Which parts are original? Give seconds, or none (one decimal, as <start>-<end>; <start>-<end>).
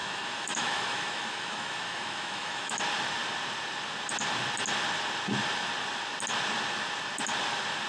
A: 2.8-7.9